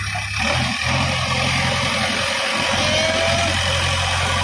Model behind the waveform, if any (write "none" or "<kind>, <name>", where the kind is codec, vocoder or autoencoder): none